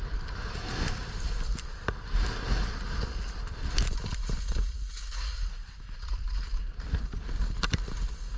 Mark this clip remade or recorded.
recorded